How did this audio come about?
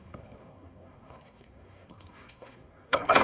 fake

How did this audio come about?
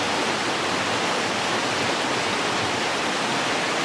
real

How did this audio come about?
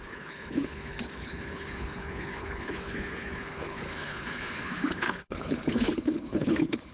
fake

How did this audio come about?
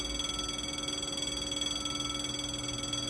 real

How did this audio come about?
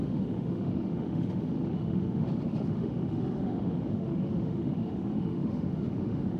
fake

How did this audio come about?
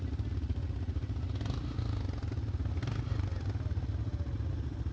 real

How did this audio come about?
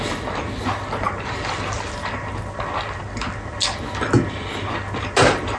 real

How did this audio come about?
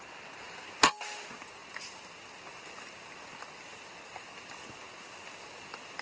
real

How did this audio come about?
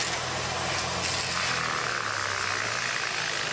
real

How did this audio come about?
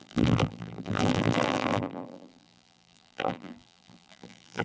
fake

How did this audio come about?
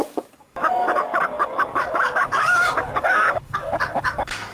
fake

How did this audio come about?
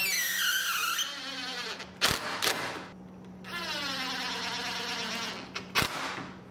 real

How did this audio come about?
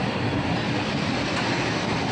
fake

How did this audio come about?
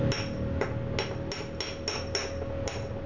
real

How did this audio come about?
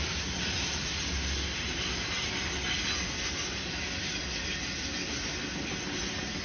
real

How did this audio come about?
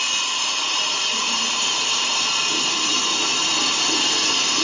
fake